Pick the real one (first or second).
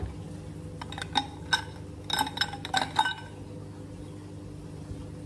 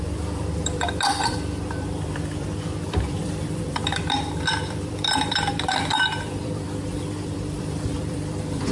first